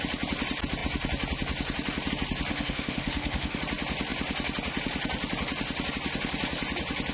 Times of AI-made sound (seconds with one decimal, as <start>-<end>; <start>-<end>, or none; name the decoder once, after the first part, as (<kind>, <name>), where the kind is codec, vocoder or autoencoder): 2.5-3.6 (autoencoder, DAC-VAE)